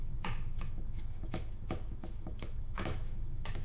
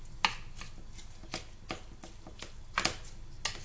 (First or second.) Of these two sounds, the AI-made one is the first